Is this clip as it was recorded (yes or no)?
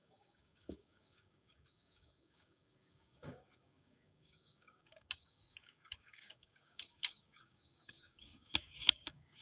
no